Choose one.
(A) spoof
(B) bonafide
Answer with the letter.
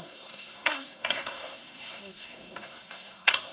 A